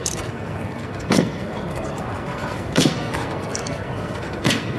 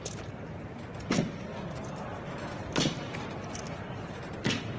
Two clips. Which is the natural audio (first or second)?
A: second